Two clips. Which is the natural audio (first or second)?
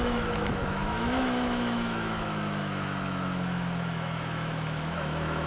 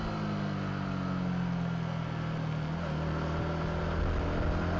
second